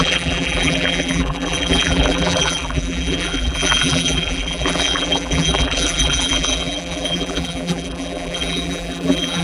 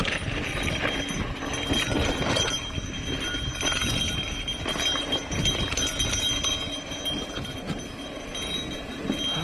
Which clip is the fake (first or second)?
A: first